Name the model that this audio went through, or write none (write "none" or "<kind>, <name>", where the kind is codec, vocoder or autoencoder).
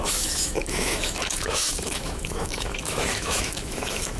autoencoder, DAC-VAE